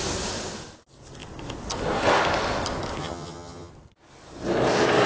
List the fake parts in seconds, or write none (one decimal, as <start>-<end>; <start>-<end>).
3.0-3.7